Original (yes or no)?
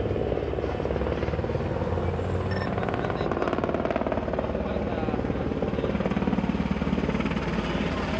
yes